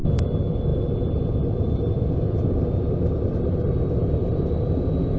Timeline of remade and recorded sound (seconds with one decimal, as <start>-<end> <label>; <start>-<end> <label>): 0.0-5.2 recorded